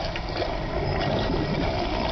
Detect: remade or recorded recorded